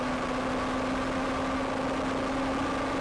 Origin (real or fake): real